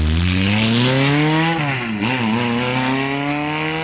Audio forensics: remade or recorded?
recorded